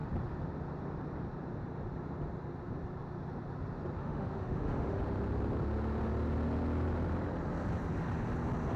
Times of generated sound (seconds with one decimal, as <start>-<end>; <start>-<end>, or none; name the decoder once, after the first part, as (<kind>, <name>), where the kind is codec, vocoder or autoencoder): 4.0-5.0 (autoencoder, DAC-VAE)